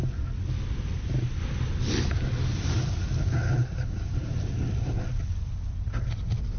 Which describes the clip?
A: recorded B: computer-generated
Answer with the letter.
A